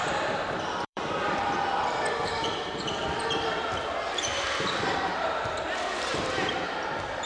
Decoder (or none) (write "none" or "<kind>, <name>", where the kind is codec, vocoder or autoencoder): vocoder, BigVGAN v2